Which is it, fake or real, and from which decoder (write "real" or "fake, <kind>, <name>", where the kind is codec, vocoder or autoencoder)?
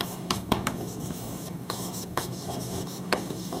fake, codec, DAC